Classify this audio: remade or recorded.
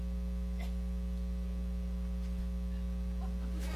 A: recorded